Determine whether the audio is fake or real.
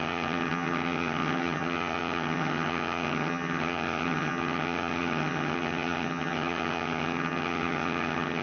fake